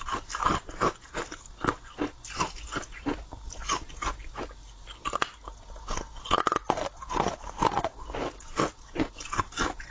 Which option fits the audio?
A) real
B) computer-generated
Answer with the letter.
A